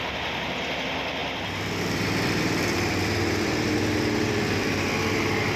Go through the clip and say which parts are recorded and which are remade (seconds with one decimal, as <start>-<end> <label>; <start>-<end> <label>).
0.0-1.2 recorded; 1.2-4.6 remade; 4.6-5.6 recorded